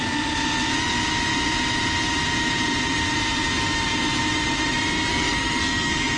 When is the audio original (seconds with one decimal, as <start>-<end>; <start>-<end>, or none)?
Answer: 0.0-5.1

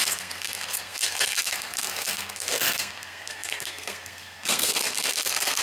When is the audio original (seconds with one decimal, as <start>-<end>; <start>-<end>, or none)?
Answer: none